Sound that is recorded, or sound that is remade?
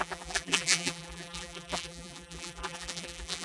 remade